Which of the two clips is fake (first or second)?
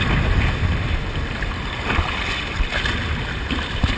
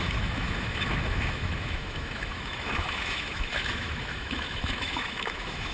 second